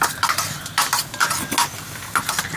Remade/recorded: recorded